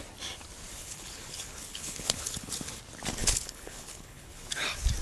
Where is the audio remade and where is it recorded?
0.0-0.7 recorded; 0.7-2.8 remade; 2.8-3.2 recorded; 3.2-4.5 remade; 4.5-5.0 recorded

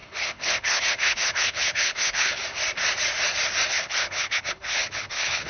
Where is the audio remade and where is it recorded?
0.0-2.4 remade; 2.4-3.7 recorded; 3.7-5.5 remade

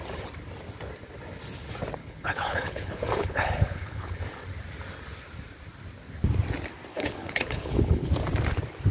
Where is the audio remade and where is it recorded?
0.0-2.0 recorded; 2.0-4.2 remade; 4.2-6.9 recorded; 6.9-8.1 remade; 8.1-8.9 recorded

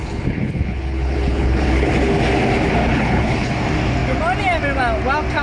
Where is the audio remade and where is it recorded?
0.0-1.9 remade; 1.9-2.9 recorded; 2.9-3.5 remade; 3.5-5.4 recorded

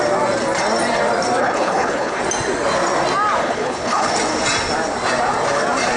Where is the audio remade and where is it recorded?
0.0-1.4 recorded; 1.4-2.2 remade; 2.2-3.4 recorded; 3.4-4.1 remade; 4.1-6.0 recorded

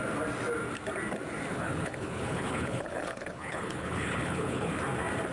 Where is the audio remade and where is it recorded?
0.0-1.5 recorded; 1.5-4.7 remade; 4.7-5.3 recorded